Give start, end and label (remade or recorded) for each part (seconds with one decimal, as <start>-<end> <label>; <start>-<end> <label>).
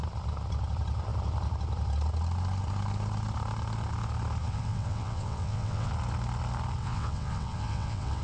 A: 0.0-4.4 recorded; 4.4-5.9 remade; 5.9-6.8 recorded; 6.8-8.2 remade